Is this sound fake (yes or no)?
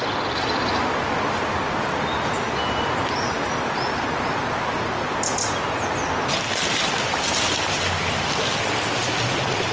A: no